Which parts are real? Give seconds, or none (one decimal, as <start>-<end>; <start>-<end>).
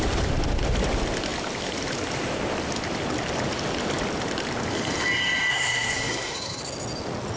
0.0-5.5; 6.6-7.4